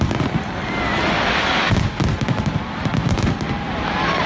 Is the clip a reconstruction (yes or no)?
no